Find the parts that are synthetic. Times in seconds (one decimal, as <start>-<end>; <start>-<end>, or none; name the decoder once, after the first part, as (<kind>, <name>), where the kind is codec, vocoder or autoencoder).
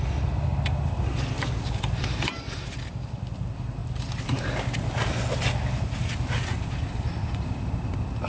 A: none